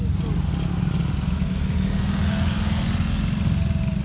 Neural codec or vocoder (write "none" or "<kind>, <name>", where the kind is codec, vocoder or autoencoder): none